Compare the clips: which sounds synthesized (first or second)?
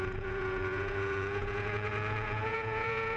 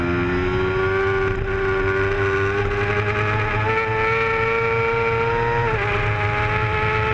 first